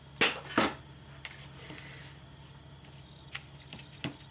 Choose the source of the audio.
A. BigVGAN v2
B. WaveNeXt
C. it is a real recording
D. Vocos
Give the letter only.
C